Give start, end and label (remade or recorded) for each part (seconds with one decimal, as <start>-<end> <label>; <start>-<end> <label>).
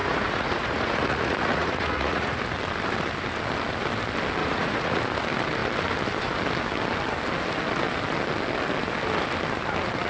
0.0-2.4 remade; 2.4-4.4 recorded; 4.4-5.0 remade; 5.0-10.1 recorded